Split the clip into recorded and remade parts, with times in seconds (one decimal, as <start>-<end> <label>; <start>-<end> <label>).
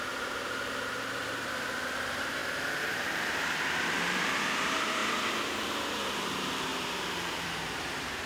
0.0-2.4 remade; 2.4-2.9 recorded; 2.9-8.3 remade